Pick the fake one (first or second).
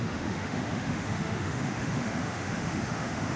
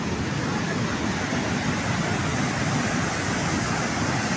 first